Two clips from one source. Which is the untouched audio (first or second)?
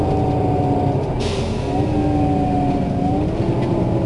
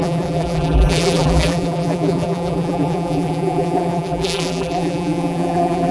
first